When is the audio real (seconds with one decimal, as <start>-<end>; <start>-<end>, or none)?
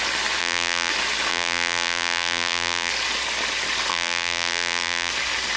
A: 0.0-0.4; 0.9-1.3; 2.9-3.9; 5.1-5.6